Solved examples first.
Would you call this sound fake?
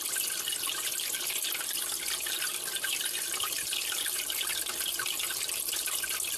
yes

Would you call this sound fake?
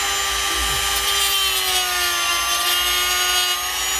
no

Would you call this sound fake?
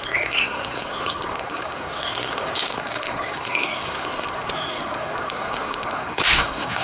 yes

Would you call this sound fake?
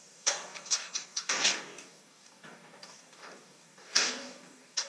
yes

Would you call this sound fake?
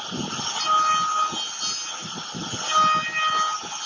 no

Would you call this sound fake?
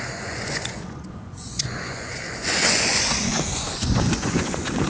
yes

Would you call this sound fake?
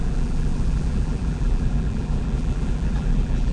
yes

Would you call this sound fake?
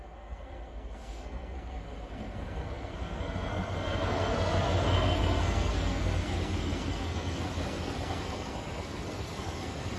yes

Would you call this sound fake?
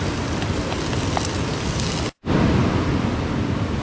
no